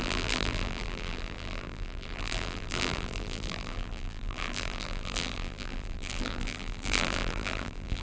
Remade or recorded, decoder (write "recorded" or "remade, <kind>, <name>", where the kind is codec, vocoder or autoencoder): remade, vocoder, BigVGAN v2